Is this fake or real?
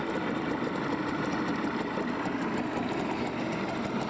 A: real